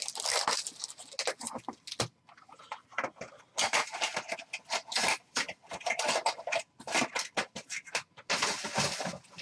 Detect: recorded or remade recorded